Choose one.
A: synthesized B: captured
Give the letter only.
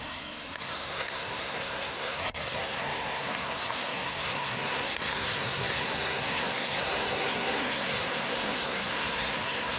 A